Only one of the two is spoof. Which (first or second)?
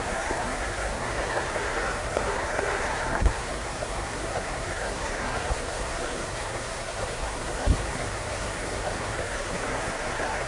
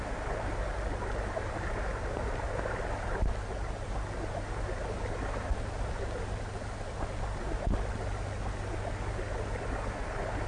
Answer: first